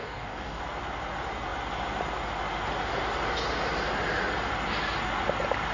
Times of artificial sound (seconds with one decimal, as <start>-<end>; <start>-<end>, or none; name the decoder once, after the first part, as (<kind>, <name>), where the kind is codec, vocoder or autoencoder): 0.0-0.6 (codec, DAC)